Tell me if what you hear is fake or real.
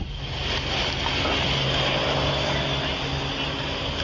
real